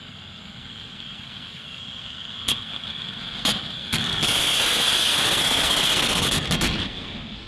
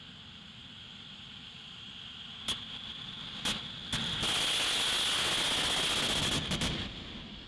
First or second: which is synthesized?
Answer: first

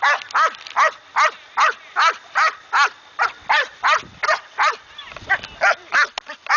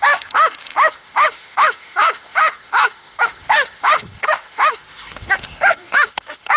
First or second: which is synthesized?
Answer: second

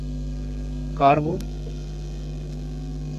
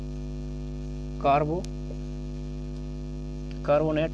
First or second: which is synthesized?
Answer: first